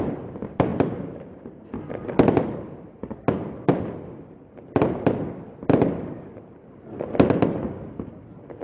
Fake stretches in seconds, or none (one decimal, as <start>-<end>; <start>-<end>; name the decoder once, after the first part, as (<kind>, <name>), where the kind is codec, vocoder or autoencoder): 0.7-1.7 (vocoder, BigVGAN v2)